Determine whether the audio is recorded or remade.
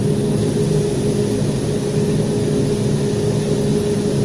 recorded